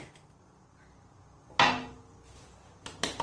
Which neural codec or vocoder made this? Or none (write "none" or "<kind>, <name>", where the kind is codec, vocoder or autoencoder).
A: none